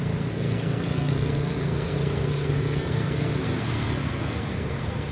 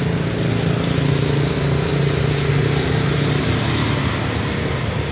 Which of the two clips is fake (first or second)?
first